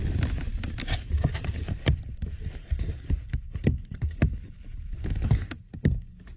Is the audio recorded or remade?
recorded